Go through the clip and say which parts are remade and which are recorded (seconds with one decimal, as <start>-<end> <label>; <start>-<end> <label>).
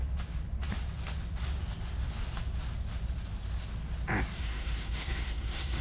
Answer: 0.0-4.4 recorded; 4.4-5.8 remade